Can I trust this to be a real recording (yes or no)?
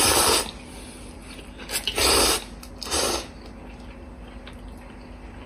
yes